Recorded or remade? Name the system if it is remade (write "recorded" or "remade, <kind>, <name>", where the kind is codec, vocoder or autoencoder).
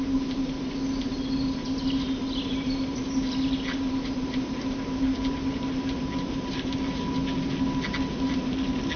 recorded